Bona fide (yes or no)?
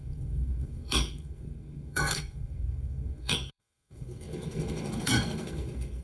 no